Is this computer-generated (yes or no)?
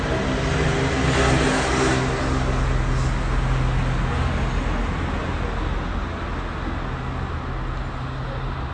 no